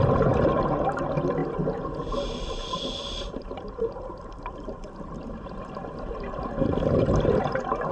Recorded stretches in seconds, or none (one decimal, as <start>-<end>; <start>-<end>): 0.0-7.9